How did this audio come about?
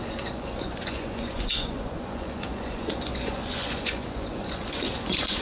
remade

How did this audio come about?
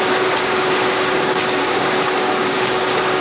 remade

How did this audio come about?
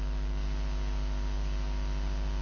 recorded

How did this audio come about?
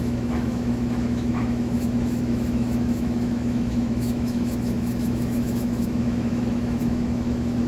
remade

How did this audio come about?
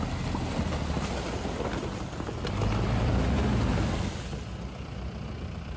recorded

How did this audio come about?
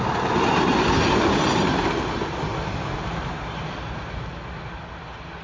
recorded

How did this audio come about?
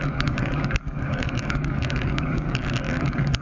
remade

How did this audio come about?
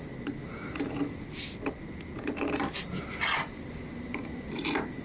recorded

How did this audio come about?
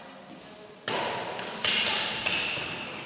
recorded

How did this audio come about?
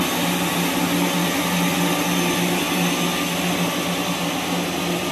recorded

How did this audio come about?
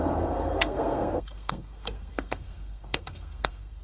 remade